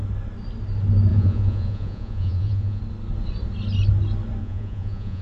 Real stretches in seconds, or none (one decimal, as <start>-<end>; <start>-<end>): 0.0-1.1; 2.8-4.4